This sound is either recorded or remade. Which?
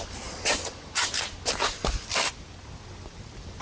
recorded